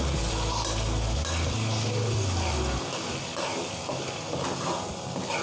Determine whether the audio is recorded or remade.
recorded